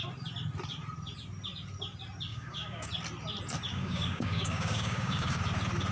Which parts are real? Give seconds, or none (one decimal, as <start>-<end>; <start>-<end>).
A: 0.0-2.3; 2.9-3.7; 5.4-5.9